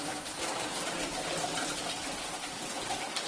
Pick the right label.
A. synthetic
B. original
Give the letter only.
B